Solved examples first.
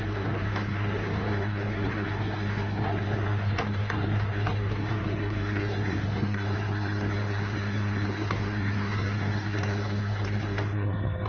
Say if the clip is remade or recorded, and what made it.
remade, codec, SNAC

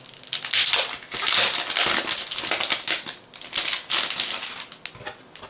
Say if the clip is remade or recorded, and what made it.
recorded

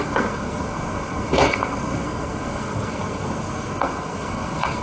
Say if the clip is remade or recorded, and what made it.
remade, codec, SNAC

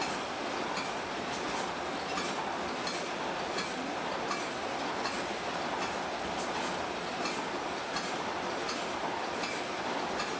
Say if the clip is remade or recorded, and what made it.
recorded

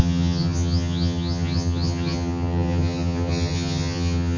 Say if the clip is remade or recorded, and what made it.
remade, vocoder, HiFi-GAN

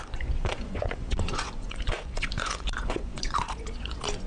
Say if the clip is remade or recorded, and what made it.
remade, vocoder, Vocos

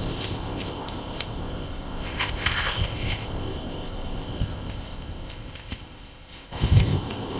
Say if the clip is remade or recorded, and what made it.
remade, codec, ZipCodec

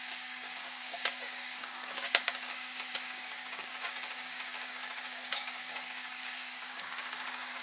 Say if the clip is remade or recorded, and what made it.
remade, codec, DAC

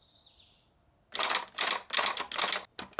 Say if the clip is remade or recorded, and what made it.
recorded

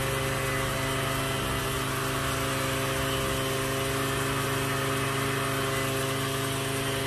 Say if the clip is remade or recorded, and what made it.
recorded